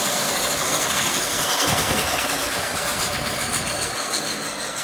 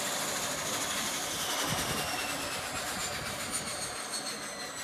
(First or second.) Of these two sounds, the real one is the second